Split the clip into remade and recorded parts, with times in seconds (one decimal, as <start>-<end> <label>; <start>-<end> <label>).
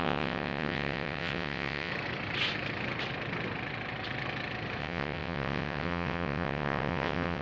0.0-1.9 remade; 1.9-4.8 recorded; 4.8-7.4 remade